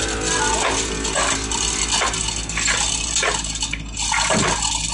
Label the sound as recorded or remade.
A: recorded